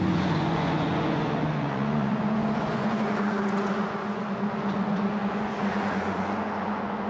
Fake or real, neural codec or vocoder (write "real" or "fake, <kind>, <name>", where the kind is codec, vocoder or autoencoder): fake, vocoder, Vocos